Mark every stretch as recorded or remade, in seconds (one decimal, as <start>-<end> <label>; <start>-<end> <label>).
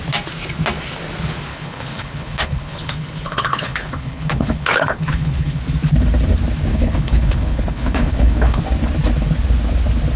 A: 0.0-1.5 recorded; 1.5-5.6 remade; 5.6-6.7 recorded; 6.7-8.6 remade; 8.6-10.2 recorded